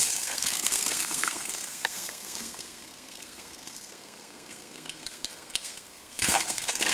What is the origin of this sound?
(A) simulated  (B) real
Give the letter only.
A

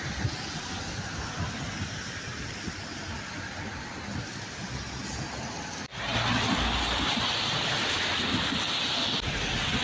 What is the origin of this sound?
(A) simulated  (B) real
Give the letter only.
B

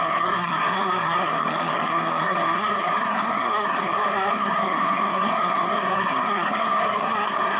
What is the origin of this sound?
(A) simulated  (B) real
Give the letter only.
A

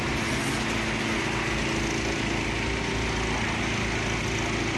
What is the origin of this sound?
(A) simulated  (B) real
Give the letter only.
B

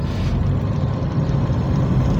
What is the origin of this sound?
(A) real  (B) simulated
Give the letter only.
A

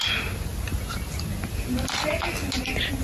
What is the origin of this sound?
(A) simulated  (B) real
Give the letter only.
B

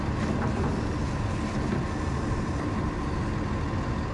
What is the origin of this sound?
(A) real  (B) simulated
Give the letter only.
A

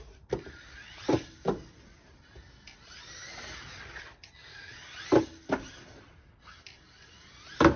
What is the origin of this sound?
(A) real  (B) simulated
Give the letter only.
A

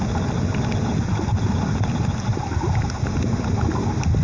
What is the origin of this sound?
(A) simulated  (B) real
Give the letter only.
B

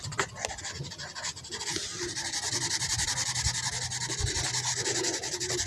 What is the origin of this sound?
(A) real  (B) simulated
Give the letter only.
A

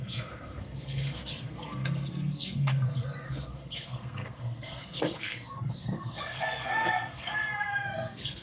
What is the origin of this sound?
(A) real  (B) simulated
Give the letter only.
B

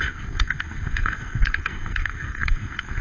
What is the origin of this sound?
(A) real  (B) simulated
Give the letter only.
B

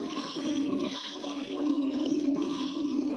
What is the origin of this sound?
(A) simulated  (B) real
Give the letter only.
A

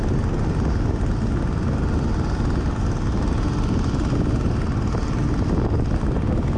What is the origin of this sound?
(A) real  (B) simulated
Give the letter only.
A